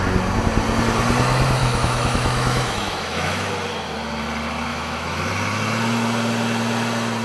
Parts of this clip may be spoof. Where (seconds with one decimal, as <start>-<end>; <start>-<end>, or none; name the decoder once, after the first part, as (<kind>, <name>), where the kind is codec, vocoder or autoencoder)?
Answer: 1.6-3.5 (autoencoder, DAC-VAE); 4.7-5.3